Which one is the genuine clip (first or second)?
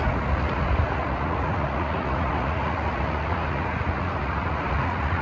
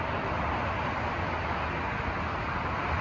second